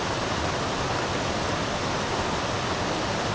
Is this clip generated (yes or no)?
no